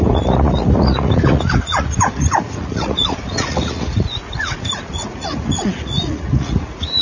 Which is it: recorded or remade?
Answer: remade